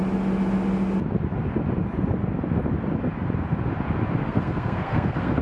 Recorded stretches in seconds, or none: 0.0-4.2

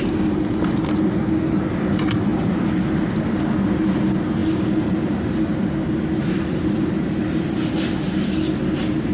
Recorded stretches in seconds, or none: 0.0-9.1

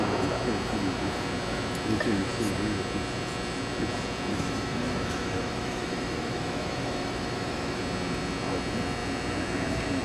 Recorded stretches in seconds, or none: 0.0-4.3; 7.8-10.0

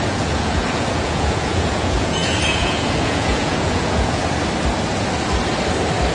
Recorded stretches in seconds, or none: 4.2-6.1